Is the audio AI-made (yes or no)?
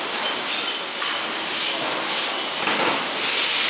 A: no